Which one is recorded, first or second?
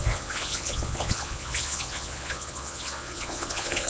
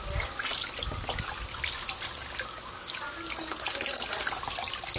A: second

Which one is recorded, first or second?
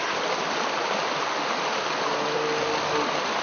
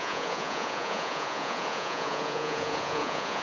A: first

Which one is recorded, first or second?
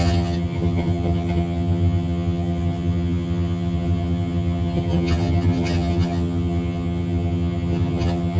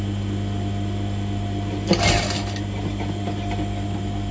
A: second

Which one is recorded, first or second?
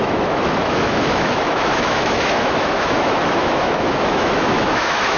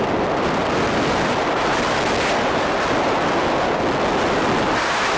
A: second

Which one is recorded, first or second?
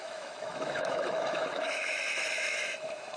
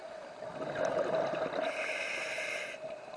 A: second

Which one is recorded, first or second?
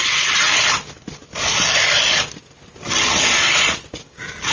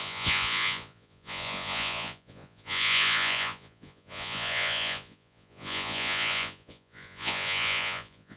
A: first